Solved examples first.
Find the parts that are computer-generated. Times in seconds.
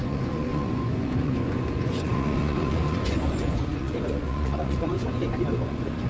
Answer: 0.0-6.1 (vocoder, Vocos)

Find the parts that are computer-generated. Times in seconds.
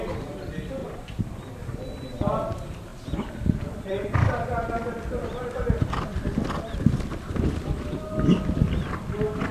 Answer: 2.9-4.7 (vocoder, BigVGAN v2)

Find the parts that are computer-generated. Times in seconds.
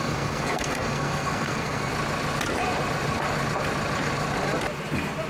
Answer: 0.0-1.9 (codec, SNAC)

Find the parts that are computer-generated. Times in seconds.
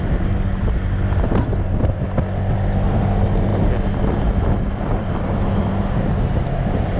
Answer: none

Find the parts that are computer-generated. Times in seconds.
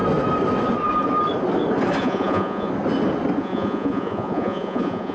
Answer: 2.0-2.7 (vocoder, Vocos); 3.4-5.1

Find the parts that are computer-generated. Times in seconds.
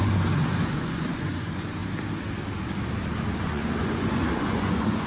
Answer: 0.0-1.8 (vocoder, Vocos); 3.4-5.1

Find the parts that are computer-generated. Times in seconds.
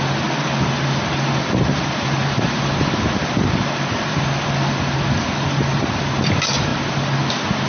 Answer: none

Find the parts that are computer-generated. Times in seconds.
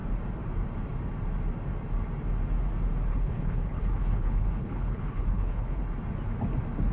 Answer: 3.1-5.8 (codec, HILCodec)